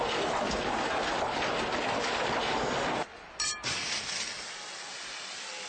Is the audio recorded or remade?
recorded